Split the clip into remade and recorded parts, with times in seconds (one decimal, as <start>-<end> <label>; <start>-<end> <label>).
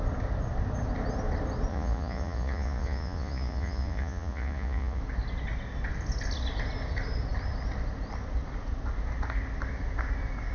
0.0-1.7 recorded; 1.7-5.0 remade; 5.0-10.5 recorded